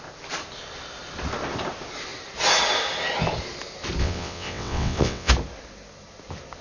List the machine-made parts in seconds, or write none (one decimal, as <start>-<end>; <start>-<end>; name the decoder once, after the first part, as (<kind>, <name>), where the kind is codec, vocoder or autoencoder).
4.0-5.3 (vocoder, WaveNeXt)